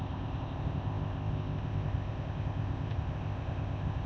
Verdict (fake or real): fake